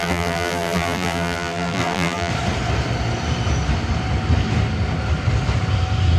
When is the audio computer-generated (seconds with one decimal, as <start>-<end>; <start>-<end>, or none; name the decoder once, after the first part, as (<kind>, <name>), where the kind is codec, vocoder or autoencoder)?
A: 0.0-2.3 (vocoder, BigVGAN v2)